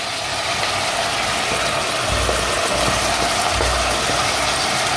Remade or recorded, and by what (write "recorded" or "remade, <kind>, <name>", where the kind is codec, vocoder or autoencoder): recorded